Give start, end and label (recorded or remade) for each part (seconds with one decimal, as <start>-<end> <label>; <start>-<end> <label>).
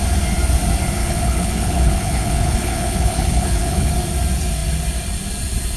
0.0-1.0 recorded; 1.0-3.9 remade; 3.9-5.8 recorded